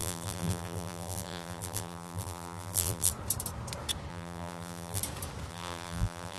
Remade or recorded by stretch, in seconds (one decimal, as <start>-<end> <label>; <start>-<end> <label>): 0.0-3.1 remade; 3.1-4.1 recorded; 4.1-5.0 remade; 5.0-5.5 recorded; 5.5-6.4 remade